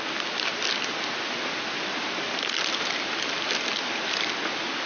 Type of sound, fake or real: real